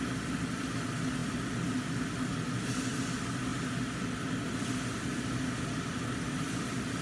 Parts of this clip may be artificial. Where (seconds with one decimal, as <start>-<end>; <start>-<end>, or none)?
none